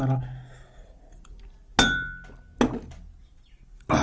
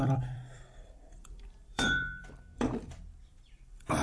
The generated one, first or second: second